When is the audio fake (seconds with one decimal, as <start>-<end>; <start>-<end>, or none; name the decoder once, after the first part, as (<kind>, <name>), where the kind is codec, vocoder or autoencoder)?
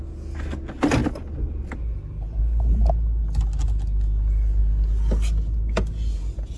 none